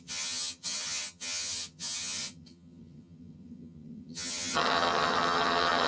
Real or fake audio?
fake